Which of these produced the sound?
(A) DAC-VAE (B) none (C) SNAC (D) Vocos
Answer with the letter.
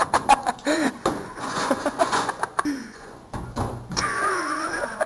D